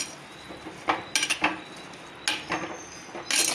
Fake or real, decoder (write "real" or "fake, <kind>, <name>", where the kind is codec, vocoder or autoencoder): real